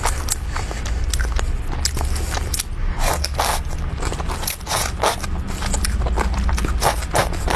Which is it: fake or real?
real